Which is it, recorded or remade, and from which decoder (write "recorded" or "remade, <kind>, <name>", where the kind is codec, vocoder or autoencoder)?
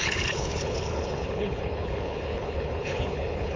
remade, codec, HILCodec